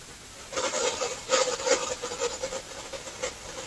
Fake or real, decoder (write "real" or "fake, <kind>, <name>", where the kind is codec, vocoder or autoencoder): real